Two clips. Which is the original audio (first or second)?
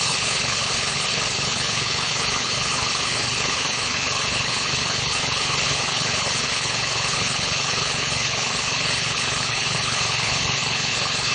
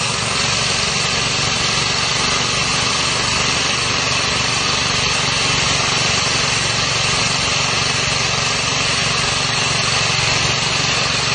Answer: second